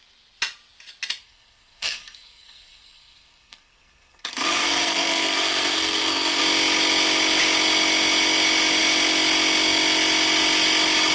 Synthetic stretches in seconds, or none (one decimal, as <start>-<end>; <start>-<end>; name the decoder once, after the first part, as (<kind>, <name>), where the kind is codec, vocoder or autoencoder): 1.2-6.4 (codec, SNAC)